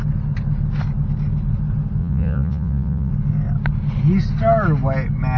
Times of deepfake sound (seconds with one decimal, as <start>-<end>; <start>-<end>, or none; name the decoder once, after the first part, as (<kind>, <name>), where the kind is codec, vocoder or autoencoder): 2.0-3.1 (vocoder, Vocos)